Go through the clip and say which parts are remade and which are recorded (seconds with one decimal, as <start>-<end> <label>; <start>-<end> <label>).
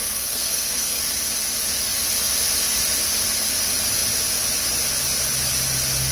0.0-1.0 remade; 1.0-6.1 recorded